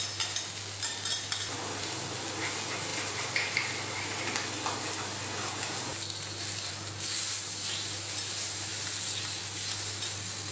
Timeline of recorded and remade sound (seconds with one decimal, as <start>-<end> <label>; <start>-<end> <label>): 0.0-10.5 recorded